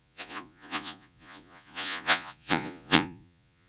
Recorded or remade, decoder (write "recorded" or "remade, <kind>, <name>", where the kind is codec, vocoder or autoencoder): remade, vocoder, Vocos